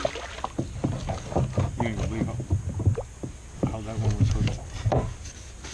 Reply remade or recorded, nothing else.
recorded